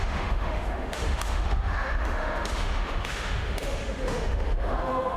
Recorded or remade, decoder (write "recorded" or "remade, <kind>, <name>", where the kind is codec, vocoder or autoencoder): remade, autoencoder, DAC-VAE